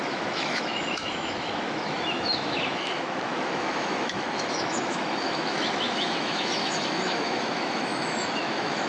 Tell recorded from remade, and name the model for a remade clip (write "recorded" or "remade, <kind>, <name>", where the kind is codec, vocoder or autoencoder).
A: remade, autoencoder, DAC-VAE